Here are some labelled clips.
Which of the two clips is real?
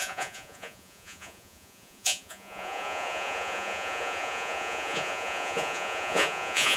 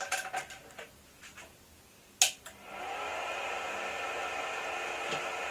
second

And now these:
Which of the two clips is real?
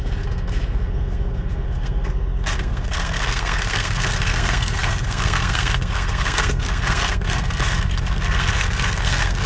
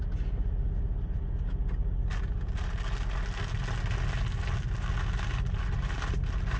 second